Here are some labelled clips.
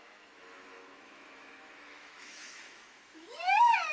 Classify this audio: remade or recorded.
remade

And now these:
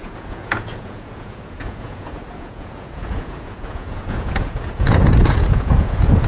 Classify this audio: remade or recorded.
remade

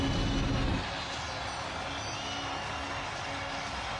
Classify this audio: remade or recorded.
recorded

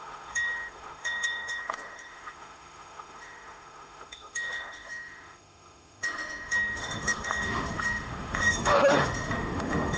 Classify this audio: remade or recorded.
remade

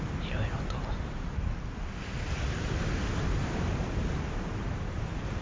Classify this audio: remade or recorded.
recorded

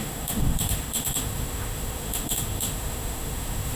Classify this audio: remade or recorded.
remade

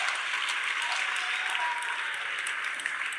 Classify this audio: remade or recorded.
recorded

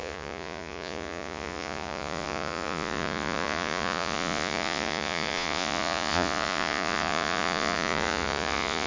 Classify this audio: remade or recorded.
remade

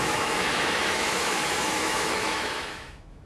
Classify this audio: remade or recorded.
remade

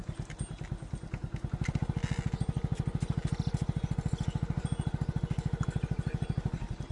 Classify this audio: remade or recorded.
recorded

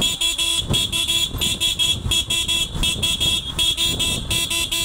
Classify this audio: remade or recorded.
recorded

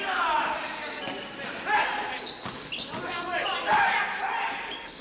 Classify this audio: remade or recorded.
recorded